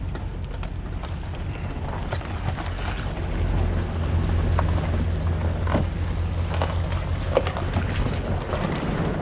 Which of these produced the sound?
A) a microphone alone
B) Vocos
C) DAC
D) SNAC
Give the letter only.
A